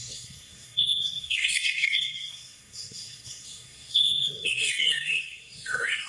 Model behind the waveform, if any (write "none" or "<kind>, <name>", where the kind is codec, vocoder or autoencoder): codec, SNAC